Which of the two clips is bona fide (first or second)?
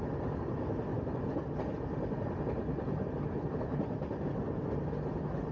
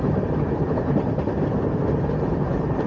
first